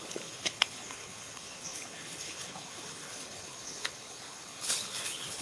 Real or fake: fake